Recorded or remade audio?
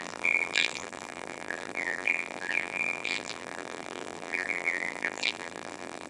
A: remade